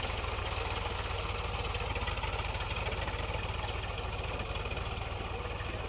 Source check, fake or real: real